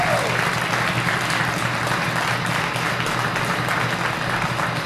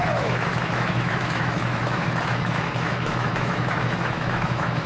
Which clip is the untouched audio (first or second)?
first